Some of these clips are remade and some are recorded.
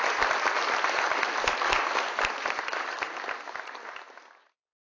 recorded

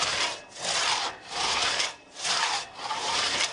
recorded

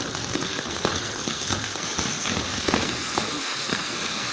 remade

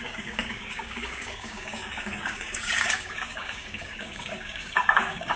remade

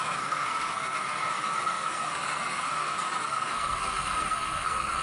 remade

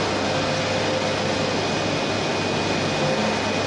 recorded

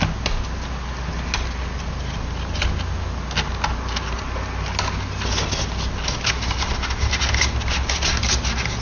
recorded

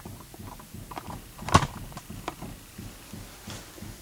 recorded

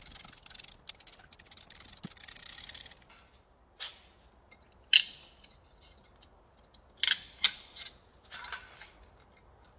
recorded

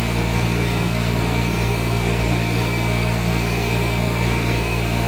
remade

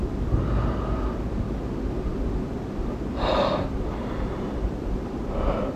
recorded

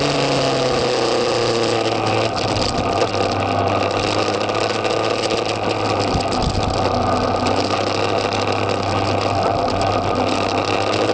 recorded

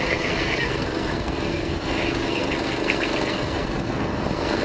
remade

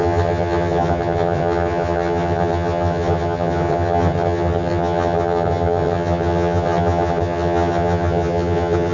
remade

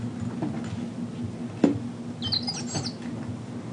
recorded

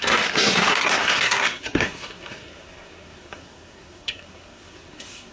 remade